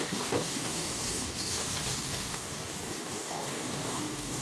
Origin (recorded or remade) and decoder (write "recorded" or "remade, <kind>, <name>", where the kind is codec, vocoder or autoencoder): remade, codec, DAC